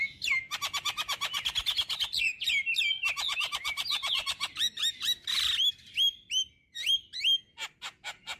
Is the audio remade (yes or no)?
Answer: no